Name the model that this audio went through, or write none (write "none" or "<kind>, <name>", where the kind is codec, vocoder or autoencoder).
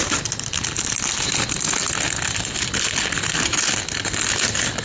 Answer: none